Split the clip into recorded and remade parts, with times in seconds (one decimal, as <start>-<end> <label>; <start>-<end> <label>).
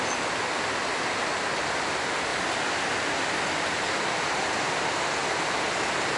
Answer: 0.0-2.3 recorded; 2.3-4.8 remade; 4.8-5.2 recorded; 5.2-6.2 remade